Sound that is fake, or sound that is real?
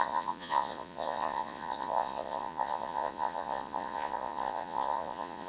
fake